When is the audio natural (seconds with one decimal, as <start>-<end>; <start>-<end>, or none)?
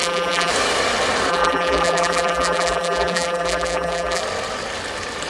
0.5-1.3; 4.2-5.3